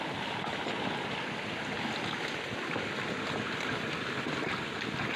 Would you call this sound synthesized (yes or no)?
no